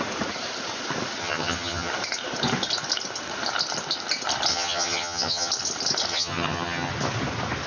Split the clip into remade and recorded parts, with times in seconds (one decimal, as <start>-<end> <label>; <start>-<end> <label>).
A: 0.0-1.2 recorded; 1.2-1.9 remade; 1.9-4.5 recorded; 4.5-5.5 remade; 5.5-6.1 recorded; 6.1-6.9 remade; 6.9-7.7 recorded